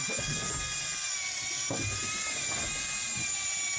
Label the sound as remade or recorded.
recorded